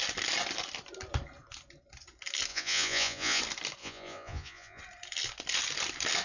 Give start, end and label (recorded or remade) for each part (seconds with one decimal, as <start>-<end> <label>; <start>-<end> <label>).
0.0-2.5 recorded; 2.5-3.4 remade; 3.4-3.8 recorded; 3.8-4.8 remade; 4.8-6.2 recorded